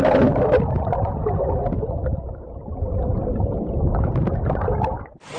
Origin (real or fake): real